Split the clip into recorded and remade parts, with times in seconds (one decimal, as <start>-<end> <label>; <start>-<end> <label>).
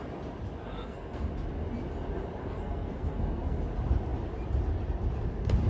0.0-0.6 recorded; 0.6-1.2 remade; 1.2-2.4 recorded; 2.4-3.6 remade; 3.6-5.7 recorded